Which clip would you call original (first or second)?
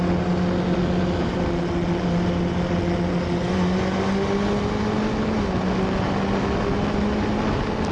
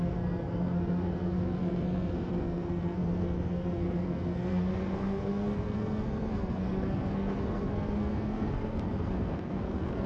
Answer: first